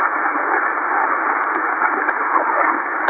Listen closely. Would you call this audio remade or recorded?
recorded